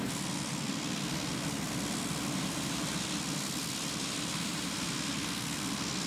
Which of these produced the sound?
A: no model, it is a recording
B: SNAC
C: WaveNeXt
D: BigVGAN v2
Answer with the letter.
A